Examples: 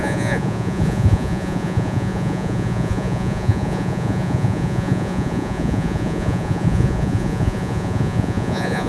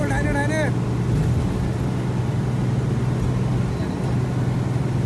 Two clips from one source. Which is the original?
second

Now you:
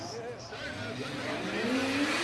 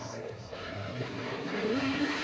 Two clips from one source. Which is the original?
first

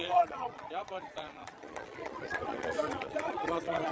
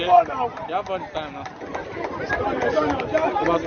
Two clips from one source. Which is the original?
second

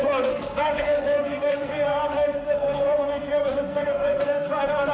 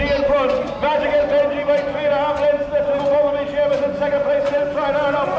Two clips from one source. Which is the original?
second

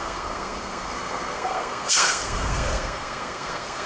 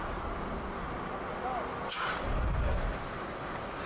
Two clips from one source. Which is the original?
second